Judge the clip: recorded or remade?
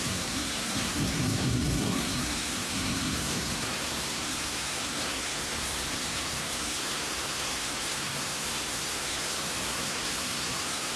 remade